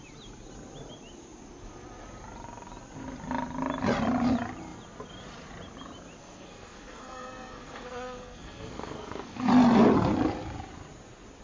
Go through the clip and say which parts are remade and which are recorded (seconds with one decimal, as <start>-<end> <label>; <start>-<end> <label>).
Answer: 0.0-6.2 recorded; 6.2-9.5 remade; 9.5-11.4 recorded